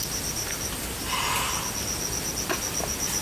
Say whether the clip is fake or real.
real